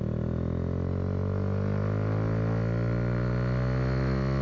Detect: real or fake real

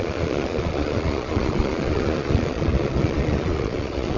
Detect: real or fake fake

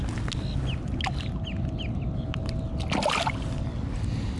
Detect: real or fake real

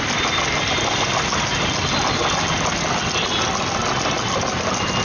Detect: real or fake real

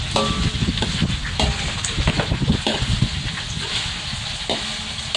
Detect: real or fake real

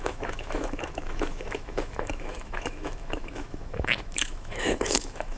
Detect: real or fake fake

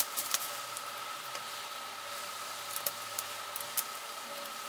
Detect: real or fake real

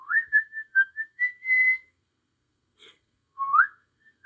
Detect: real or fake fake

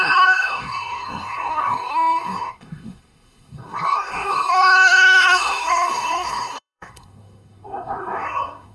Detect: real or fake fake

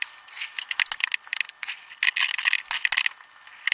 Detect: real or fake real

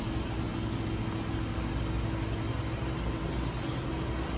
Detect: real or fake real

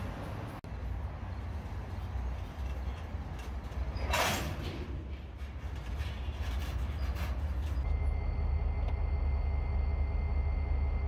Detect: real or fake real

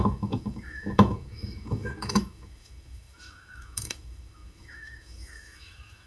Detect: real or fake fake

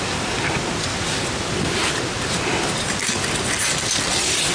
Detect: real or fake real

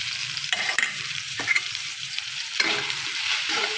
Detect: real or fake fake